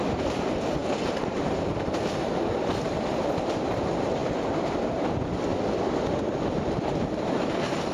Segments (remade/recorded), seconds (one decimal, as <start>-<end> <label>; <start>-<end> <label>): 0.0-5.5 remade; 5.5-6.2 recorded; 6.2-7.9 remade